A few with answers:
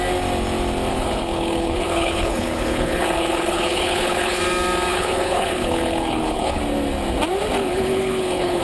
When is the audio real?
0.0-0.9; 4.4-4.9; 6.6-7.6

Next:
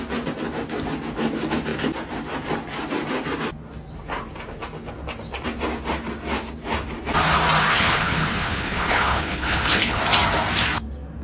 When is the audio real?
0.0-7.7; 10.0-11.2

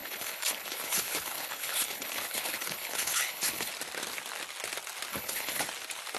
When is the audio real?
3.7-5.1; 5.6-6.2

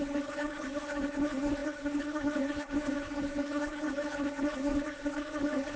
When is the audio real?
none